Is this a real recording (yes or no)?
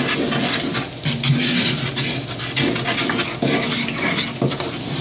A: yes